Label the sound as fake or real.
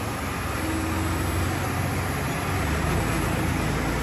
real